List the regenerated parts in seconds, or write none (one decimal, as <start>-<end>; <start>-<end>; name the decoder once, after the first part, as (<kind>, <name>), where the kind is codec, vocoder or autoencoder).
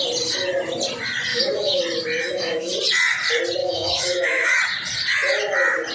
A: 1.3-1.8 (autoencoder, DAC-VAE); 2.2-2.7; 3.6-4.6